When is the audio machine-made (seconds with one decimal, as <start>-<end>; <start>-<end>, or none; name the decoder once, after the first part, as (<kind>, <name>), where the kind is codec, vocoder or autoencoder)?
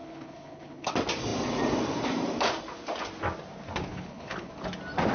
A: 0.0-0.9 (codec, HILCodec); 3.9-4.5